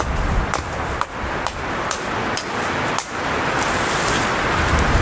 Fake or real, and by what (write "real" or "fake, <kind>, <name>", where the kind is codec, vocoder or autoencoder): fake, vocoder, BigVGAN v2